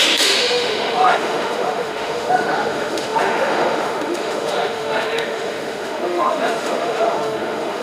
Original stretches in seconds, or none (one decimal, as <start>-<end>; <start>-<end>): none